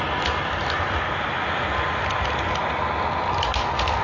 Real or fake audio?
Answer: real